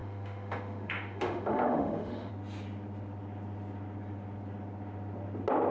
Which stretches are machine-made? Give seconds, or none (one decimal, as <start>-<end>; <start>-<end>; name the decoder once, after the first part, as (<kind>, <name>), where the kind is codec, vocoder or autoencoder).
0.0-2.3 (autoencoder, DAC-VAE)